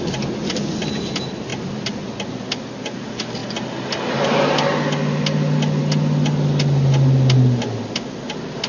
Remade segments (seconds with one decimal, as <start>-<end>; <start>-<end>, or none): none